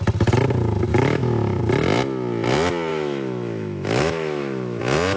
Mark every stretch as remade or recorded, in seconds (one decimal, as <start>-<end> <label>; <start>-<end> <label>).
0.0-0.9 recorded; 0.9-1.6 remade; 1.6-2.9 recorded; 2.9-4.8 remade; 4.8-5.2 recorded